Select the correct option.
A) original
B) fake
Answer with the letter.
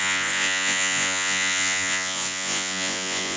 B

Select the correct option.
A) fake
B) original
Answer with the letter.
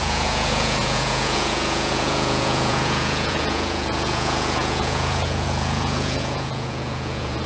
A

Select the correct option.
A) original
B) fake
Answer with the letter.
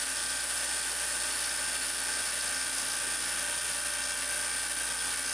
A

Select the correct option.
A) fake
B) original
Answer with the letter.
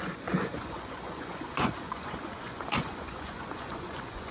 A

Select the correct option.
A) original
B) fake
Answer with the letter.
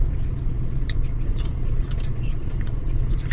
B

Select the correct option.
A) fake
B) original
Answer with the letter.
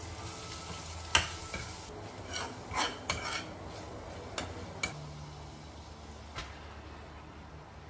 B